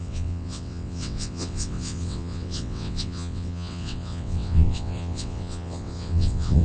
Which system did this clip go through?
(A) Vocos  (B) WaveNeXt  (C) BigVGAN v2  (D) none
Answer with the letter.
B